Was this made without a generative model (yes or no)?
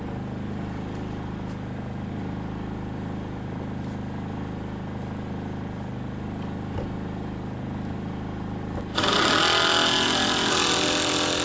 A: yes